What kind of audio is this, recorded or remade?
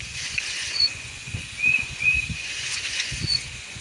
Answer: remade